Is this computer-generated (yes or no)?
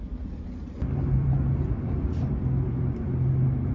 yes